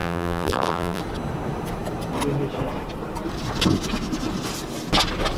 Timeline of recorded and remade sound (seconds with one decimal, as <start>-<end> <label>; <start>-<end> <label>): 0.0-1.0 remade; 1.0-5.4 recorded